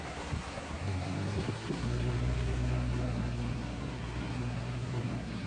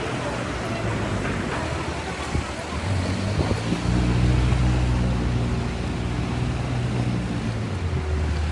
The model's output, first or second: first